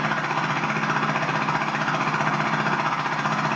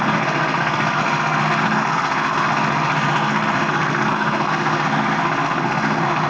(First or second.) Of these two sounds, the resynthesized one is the second